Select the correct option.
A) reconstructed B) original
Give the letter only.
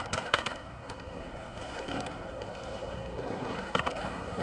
A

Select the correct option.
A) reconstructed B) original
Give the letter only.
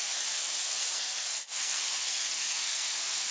A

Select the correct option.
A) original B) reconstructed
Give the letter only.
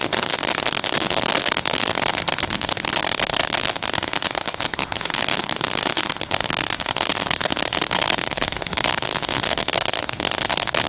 B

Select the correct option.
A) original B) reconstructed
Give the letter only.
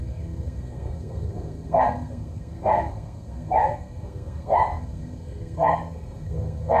B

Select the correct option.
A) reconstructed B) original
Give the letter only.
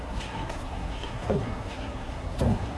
A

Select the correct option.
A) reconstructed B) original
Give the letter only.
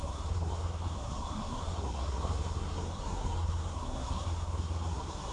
A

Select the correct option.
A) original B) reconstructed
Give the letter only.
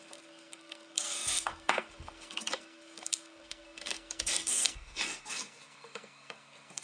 B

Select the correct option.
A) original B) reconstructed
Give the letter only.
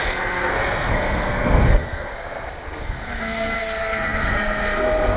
B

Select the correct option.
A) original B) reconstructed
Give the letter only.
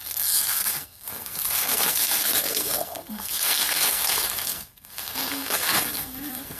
B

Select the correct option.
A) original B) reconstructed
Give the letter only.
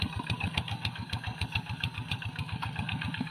B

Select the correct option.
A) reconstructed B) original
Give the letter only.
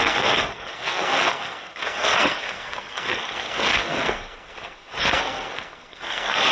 A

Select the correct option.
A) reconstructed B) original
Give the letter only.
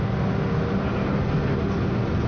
B